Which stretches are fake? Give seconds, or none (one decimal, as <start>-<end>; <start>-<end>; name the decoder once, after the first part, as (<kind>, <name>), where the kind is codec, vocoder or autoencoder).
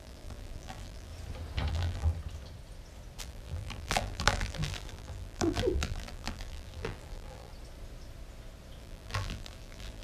0.0-1.1 (vocoder, BigVGAN v2); 1.7-2.1; 3.2-7.5; 8.8-10.0